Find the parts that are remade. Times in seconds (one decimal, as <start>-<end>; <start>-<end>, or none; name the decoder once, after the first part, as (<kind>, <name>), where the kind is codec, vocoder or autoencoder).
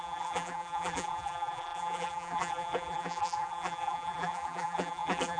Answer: 0.0-5.4 (vocoder, BigVGAN v2)